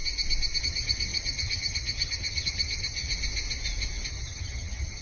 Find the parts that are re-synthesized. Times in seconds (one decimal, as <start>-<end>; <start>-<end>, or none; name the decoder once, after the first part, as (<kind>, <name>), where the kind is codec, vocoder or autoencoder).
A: 0.6-3.1 (vocoder, HiFi-GAN); 4.1-5.0